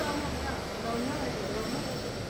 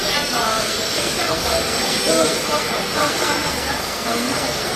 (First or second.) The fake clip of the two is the second